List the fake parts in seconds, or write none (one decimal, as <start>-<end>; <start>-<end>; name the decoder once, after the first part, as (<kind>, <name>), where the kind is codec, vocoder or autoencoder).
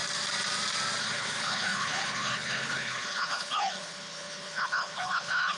1.0-5.6 (codec, HILCodec)